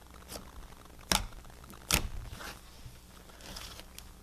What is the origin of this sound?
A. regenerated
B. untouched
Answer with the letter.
B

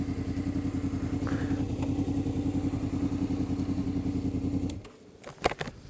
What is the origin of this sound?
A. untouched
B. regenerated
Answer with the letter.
A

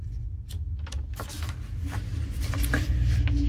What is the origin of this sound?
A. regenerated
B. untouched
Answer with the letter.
B